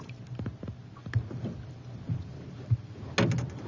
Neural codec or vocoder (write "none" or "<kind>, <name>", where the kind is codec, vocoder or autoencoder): none